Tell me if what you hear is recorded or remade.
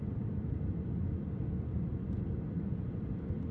recorded